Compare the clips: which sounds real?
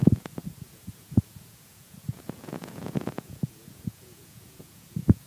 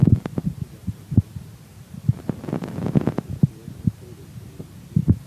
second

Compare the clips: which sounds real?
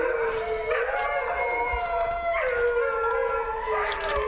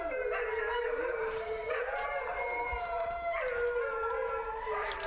first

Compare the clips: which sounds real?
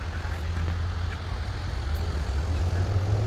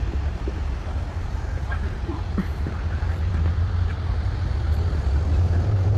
first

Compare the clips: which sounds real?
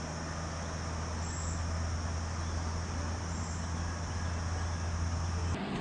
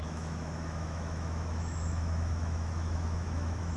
first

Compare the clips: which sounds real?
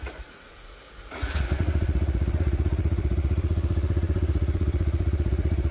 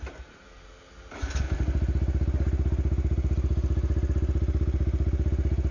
second